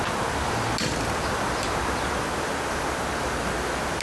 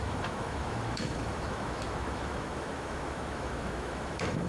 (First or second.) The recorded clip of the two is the first